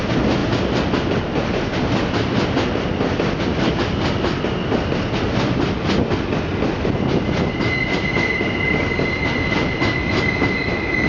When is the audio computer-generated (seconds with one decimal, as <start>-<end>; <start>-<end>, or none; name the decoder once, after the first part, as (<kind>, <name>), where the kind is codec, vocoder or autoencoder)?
none